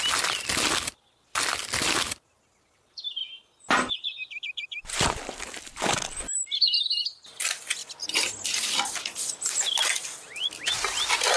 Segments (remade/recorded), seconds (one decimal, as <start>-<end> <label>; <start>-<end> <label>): 0.0-11.4 recorded